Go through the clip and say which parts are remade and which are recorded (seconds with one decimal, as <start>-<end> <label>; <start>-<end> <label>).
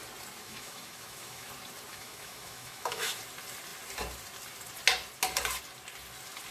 0.0-0.4 recorded; 0.4-1.5 remade; 1.5-1.9 recorded; 1.9-3.2 remade; 3.2-6.5 recorded